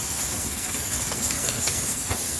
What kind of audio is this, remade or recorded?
remade